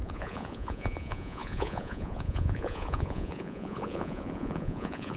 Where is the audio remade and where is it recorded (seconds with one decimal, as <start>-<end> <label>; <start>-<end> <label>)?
0.0-5.2 remade